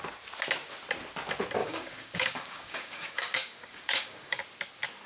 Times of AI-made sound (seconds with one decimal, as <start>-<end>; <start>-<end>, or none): 1.6-4.4